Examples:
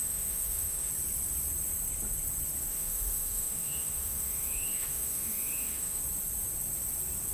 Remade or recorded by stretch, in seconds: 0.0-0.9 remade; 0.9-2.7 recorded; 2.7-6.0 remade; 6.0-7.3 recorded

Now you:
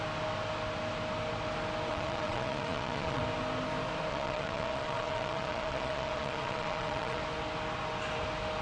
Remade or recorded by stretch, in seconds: 0.0-1.9 recorded; 1.9-3.2 remade; 3.2-4.1 recorded; 4.1-7.2 remade; 7.2-8.6 recorded

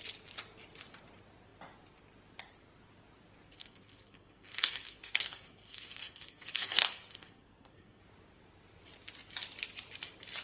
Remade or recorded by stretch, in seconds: 0.0-3.5 recorded; 3.5-8.0 remade; 8.0-10.4 recorded

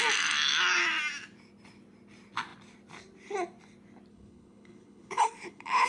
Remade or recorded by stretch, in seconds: 0.0-4.1 recorded; 4.1-5.9 remade

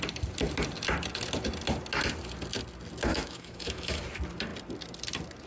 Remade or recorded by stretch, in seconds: 0.0-3.1 recorded; 3.1-4.0 remade; 4.0-5.5 recorded

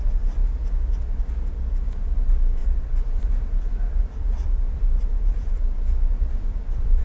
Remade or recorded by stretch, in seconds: 0.0-2.6 recorded; 2.6-5.5 remade; 5.5-6.1 recorded; 6.1-7.0 remade